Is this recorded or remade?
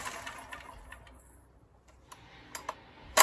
recorded